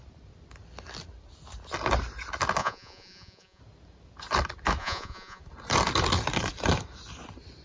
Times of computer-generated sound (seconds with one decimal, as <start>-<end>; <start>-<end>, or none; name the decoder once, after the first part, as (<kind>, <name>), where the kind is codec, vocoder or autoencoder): 2.6-3.6 (vocoder, Vocos); 4.8-5.4